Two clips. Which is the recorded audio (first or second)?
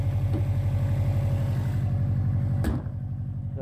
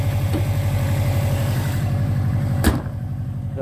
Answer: first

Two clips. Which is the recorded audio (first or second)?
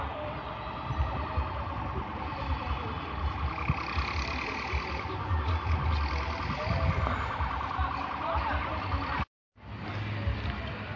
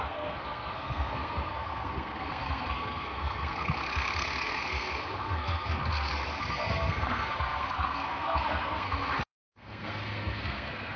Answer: first